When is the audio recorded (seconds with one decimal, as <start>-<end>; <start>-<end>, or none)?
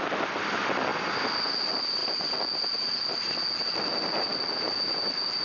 0.0-5.4